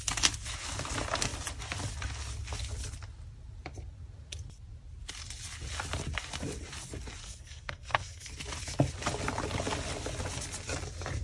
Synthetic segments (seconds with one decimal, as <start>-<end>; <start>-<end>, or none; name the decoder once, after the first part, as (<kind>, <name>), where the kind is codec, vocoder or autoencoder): 7.2-8.3 (codec, SNAC)